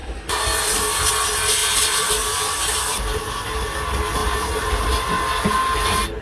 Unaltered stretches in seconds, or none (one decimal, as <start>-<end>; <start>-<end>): 0.0-1.6; 3.2-6.2